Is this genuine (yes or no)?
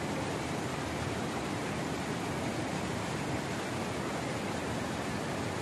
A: yes